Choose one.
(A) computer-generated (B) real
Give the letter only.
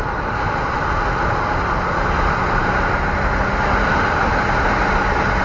B